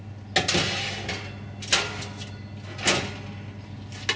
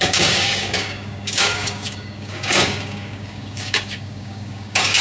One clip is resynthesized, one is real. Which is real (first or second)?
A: first